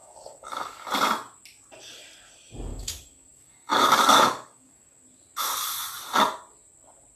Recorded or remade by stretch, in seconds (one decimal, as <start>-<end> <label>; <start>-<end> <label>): 0.0-0.9 remade; 0.9-2.7 recorded; 2.7-5.0 remade; 5.0-7.1 recorded